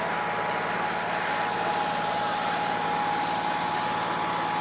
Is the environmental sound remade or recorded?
recorded